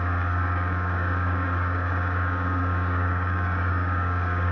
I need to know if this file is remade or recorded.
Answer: remade